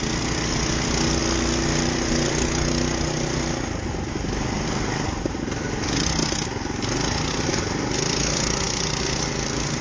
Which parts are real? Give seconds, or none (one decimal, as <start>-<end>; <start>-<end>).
0.0-9.8